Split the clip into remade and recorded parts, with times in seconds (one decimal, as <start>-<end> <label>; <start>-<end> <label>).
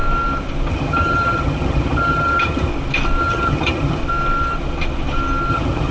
0.0-0.7 recorded; 0.7-2.7 remade; 2.7-3.2 recorded; 3.2-4.0 remade; 4.0-5.5 recorded; 5.5-5.9 remade